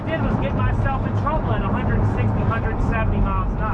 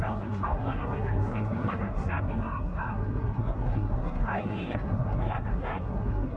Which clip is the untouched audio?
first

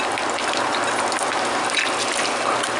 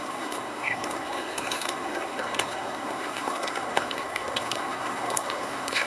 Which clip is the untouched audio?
first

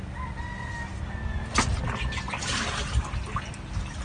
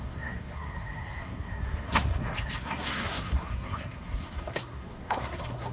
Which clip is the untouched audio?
first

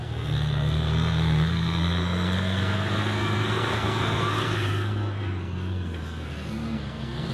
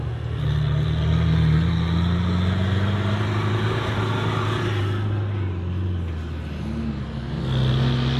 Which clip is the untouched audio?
second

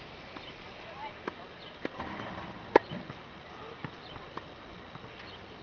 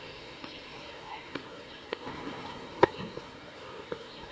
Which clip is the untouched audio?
first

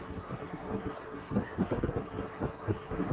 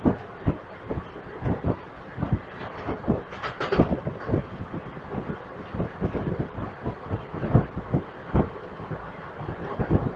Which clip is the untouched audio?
second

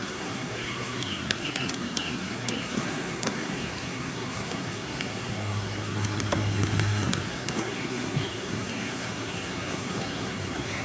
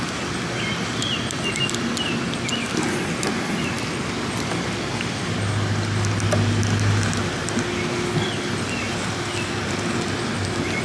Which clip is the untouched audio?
second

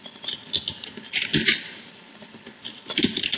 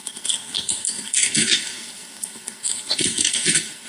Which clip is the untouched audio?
first